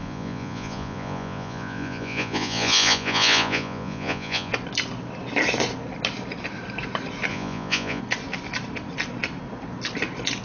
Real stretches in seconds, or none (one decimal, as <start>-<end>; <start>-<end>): 4.5-7.3; 8.0-10.4